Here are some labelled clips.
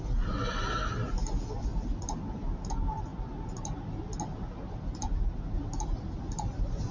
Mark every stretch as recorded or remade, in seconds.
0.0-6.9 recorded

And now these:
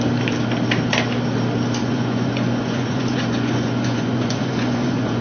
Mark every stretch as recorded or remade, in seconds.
0.0-1.8 recorded; 1.8-5.2 remade

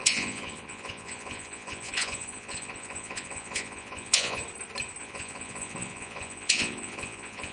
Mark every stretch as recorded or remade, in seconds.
0.0-4.4 remade; 4.4-5.0 recorded; 5.0-7.5 remade

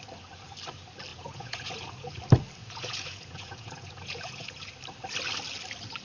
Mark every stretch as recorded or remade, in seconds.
0.0-1.1 recorded; 1.1-2.2 remade; 2.2-2.6 recorded; 2.6-4.7 remade; 4.7-6.0 recorded

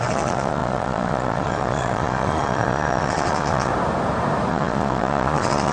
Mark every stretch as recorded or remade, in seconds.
0.0-3.7 remade; 3.7-4.5 recorded; 4.5-5.7 remade

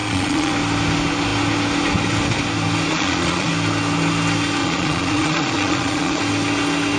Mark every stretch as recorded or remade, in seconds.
0.0-0.5 remade; 0.5-2.9 recorded; 2.9-3.5 remade; 3.5-4.6 recorded; 4.6-6.2 remade; 6.2-7.0 recorded

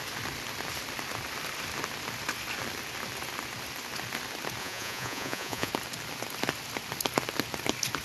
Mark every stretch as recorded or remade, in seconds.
0.0-4.6 recorded; 4.6-5.7 remade; 5.7-8.0 recorded

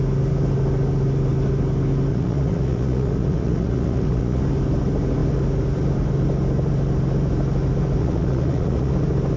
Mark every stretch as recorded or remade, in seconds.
0.0-2.1 recorded; 2.1-4.4 remade; 4.4-8.0 recorded; 8.0-8.9 remade; 8.9-9.4 recorded